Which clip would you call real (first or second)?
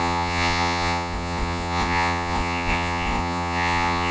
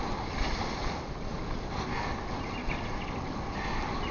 second